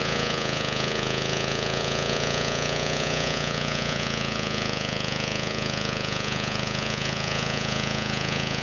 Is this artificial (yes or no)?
yes